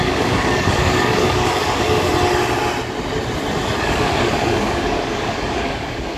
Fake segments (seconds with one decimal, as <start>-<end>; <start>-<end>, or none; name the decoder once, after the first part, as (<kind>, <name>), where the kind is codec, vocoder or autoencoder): 0.0-2.1 (codec, DAC); 3.8-6.2